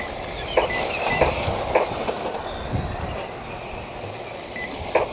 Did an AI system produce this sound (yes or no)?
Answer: no